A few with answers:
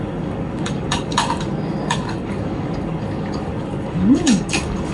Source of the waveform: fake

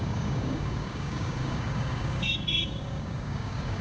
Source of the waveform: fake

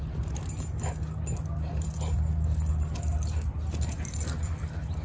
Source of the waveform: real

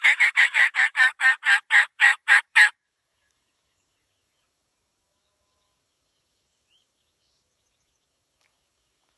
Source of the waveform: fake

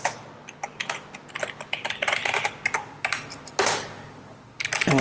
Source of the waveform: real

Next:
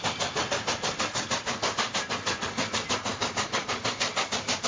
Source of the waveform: real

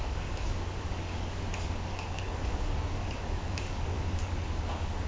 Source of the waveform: fake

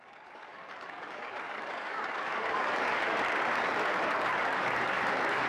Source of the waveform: fake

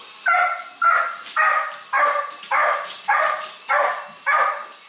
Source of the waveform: real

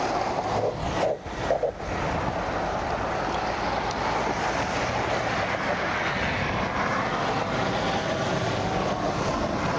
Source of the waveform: real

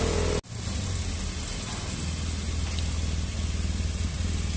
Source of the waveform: real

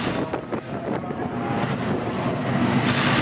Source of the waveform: real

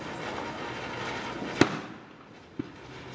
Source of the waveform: real